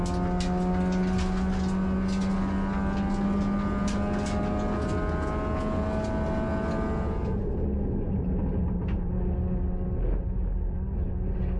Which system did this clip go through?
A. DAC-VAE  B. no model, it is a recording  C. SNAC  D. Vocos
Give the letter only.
B